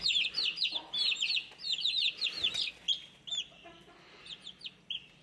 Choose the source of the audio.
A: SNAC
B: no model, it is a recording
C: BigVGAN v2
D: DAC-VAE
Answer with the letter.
B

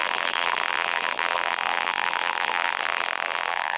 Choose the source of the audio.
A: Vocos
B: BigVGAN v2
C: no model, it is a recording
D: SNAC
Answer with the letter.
B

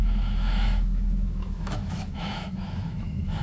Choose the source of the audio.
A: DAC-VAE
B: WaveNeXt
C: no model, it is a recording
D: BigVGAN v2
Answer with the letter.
A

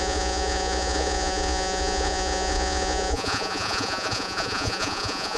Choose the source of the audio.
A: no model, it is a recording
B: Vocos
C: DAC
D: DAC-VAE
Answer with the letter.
B